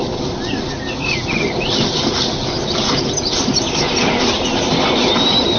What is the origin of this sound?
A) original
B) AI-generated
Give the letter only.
A